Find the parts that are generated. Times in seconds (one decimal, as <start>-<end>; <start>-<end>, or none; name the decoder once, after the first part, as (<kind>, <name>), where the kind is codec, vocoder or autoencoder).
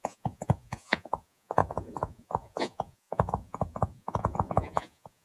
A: 0.0-5.2 (vocoder, Vocos)